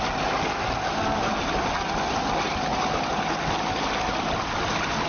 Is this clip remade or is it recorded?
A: recorded